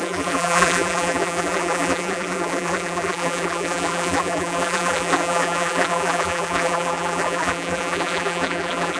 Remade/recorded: remade